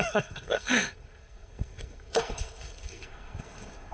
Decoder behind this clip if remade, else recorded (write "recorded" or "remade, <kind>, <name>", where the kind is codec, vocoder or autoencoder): remade, codec, SNAC